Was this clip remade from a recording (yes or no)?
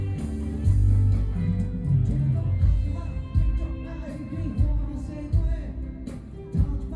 no